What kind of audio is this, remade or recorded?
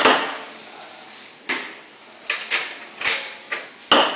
recorded